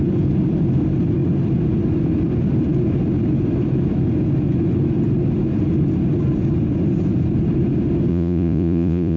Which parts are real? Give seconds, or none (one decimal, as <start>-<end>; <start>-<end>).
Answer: 0.0-8.1